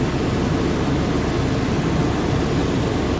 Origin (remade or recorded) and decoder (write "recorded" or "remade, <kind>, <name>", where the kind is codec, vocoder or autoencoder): recorded